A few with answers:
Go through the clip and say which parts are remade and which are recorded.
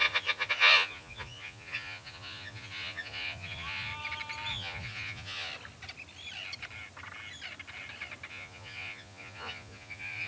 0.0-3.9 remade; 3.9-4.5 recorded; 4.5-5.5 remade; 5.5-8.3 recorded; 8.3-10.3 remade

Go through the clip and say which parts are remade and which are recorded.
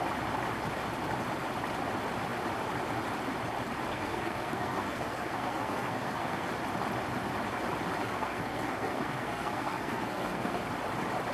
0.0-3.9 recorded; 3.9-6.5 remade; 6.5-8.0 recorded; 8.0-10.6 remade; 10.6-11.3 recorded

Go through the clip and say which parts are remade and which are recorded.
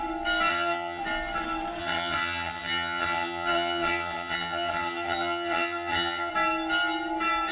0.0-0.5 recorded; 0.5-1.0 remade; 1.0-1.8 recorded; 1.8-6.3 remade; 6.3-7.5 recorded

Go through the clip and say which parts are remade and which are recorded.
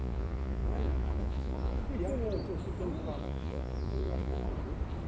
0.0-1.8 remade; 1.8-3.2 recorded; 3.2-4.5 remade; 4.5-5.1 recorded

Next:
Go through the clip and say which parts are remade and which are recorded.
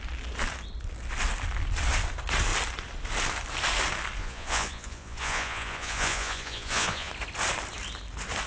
0.0-4.2 recorded; 4.2-7.1 remade; 7.1-8.5 recorded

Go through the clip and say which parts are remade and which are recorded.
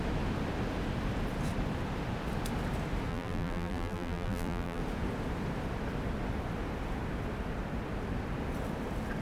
0.0-3.1 recorded; 3.1-4.8 remade; 4.8-9.2 recorded